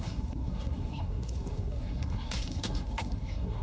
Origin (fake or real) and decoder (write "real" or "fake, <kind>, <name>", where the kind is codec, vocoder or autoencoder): fake, codec, SNAC